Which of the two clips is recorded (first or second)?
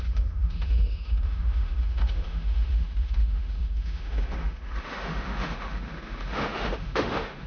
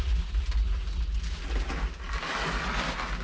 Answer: second